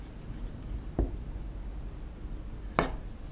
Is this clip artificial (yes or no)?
no